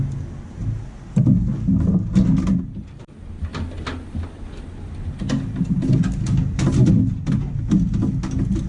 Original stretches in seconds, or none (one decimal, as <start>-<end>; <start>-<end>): 0.0-8.7